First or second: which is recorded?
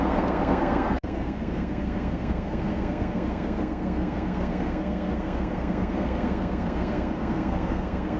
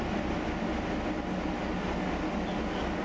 second